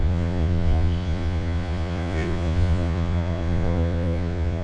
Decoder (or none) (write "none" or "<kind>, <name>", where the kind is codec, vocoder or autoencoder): vocoder, Vocos